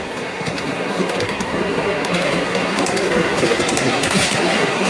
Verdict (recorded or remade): remade